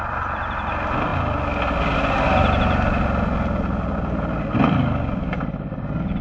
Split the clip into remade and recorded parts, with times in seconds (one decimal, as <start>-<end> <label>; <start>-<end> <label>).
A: 0.0-6.2 recorded